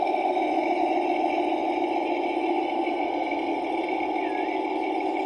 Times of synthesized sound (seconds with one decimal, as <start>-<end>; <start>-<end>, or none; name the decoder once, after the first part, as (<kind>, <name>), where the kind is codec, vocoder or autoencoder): none